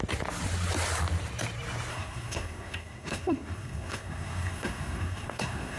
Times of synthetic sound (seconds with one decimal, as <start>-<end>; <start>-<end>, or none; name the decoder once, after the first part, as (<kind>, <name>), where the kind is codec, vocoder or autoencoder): 1.9-5.8 (codec, SNAC)